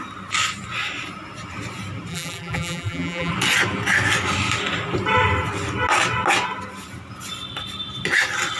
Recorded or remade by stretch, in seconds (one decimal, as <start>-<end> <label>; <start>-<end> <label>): 0.0-2.1 recorded; 2.1-3.3 remade; 3.3-8.6 recorded